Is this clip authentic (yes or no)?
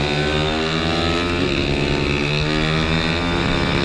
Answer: yes